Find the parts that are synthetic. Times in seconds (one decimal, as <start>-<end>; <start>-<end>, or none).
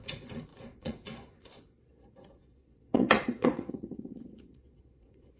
0.0-5.4